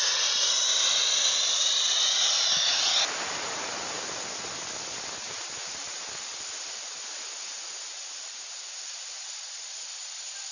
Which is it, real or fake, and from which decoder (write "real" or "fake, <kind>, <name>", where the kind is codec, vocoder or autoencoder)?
real